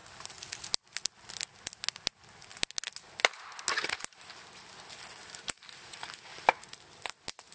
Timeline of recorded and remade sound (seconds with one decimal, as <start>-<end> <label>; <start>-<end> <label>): 0.0-7.5 recorded